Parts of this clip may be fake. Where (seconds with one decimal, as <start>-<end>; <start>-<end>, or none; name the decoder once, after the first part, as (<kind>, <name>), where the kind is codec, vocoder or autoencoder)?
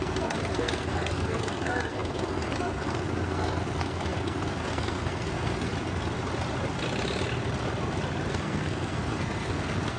0.0-5.7 (codec, SNAC); 8.3-10.0